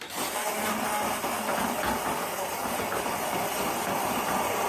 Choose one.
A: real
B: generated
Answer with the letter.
A